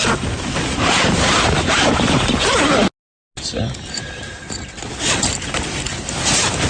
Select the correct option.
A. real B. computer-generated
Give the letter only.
A